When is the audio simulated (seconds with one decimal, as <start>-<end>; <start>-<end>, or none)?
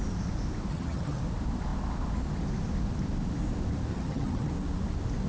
0.7-1.2; 3.9-4.5